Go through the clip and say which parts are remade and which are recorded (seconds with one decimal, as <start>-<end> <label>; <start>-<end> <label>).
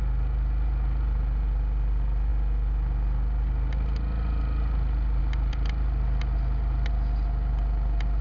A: 0.0-8.2 recorded